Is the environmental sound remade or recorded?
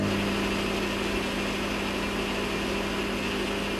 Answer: recorded